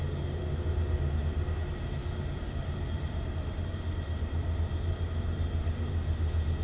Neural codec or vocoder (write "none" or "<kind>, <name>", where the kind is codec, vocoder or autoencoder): none